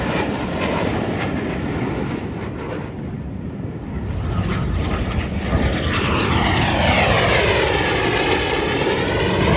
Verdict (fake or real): real